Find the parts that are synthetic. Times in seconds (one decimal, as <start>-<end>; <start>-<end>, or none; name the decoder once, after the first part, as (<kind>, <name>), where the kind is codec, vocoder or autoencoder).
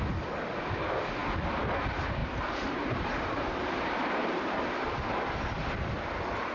2.2-4.6 (vocoder, BigVGAN v2)